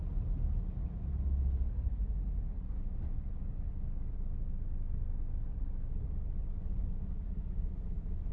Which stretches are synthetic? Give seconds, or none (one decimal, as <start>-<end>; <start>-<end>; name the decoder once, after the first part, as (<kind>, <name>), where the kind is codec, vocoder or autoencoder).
3.4-4.1 (codec, DAC)